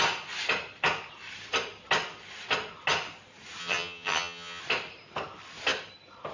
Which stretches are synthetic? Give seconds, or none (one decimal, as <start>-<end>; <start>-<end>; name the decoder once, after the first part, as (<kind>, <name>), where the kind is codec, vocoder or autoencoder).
3.6-4.6 (vocoder, HiFi-GAN)